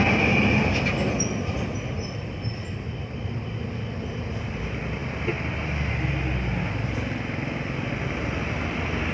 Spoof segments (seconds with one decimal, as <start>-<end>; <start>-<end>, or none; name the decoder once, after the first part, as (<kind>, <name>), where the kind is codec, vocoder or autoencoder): none